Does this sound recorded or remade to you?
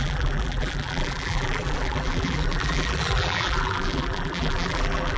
remade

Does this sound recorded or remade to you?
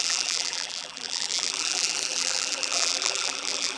remade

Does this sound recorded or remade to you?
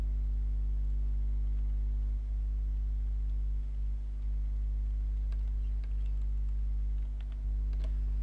recorded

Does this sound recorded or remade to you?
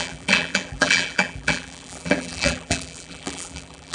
remade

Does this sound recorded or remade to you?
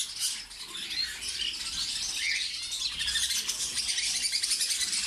recorded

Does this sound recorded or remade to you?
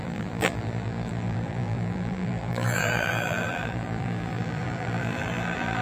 remade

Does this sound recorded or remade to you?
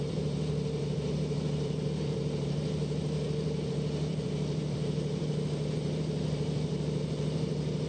remade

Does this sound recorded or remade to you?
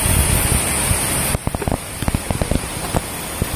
recorded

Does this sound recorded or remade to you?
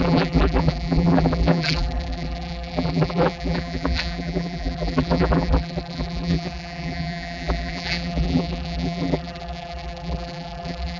remade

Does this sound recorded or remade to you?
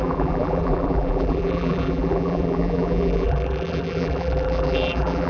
remade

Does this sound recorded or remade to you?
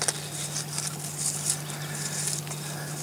recorded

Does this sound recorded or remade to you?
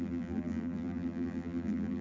remade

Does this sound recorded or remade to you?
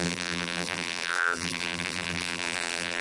remade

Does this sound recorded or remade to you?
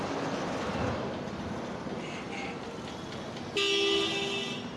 recorded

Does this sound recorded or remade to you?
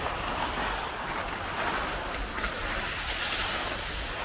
recorded